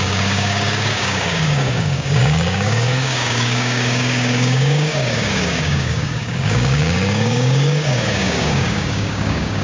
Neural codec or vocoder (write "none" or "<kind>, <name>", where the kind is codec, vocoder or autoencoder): codec, DAC